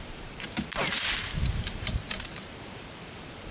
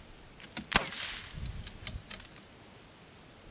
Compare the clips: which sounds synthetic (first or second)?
first